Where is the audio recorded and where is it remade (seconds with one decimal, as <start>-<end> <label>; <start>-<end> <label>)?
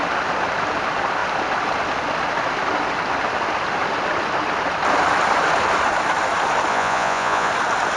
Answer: 0.0-6.7 recorded; 6.7-7.5 remade; 7.5-8.0 recorded